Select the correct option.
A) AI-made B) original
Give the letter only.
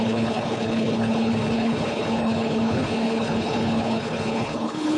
A